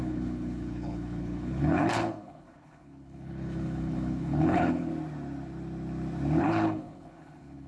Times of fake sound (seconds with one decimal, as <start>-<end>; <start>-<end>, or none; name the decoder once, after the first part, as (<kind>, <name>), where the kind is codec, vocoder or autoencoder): 0.0-4.9 (codec, HILCodec); 6.4-7.7

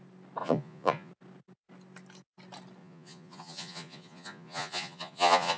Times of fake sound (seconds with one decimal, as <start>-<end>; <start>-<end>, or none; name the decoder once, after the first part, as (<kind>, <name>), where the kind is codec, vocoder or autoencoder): 0.4-1.1 (vocoder, Vocos); 2.8-5.6

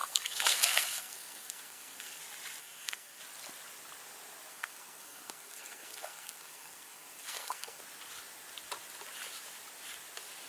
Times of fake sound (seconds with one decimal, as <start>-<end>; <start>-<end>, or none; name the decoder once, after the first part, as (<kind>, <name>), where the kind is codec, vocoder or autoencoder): 0.0-2.2 (codec, SNAC); 2.6-3.2; 4.5-7.8

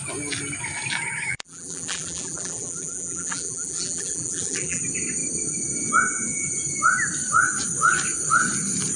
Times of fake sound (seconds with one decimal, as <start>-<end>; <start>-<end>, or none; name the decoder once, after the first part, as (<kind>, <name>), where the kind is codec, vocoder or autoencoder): 1.3-4.8 (vocoder, BigVGAN v2)

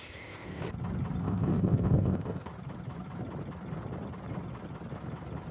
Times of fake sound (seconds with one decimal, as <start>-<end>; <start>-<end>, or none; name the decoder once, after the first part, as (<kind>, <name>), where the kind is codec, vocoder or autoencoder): 0.0-0.6 (codec, ZipCodec); 1.2-2.5

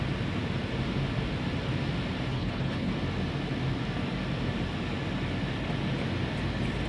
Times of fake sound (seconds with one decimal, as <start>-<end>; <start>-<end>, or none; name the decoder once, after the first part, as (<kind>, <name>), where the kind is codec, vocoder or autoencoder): 2.3-2.9 (codec, HILCodec)

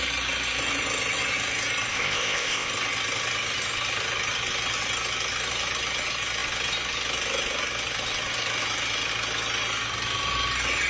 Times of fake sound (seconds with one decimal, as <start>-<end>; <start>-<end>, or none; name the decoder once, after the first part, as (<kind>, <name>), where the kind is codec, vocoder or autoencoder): 1.9-2.7 (codec, ZipCodec)

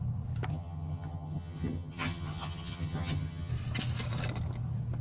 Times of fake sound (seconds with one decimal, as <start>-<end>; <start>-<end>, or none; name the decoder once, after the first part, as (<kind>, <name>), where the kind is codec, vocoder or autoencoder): 0.5-3.5 (vocoder, HiFi-GAN)